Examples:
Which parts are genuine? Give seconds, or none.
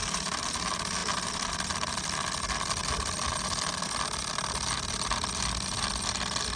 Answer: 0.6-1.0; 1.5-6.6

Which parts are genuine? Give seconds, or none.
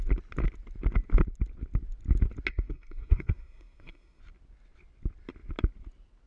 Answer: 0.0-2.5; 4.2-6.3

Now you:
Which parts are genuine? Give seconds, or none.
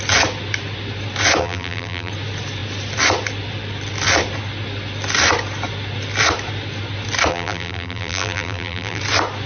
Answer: 0.0-1.4; 2.1-7.3; 9.0-9.5